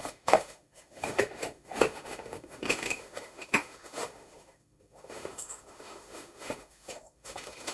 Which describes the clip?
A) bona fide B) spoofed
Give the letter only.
B